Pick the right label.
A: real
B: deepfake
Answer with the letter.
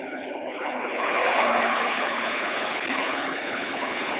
B